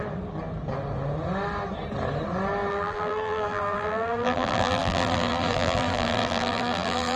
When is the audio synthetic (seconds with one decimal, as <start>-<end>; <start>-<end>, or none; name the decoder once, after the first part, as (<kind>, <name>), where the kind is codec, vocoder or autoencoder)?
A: 2.7-7.2 (vocoder, BigVGAN v2)